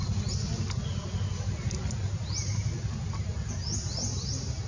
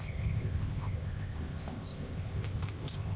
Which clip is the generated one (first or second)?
second